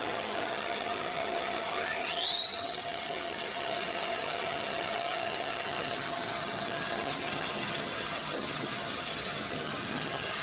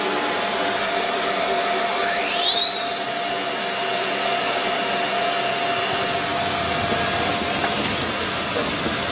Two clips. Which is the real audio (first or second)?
second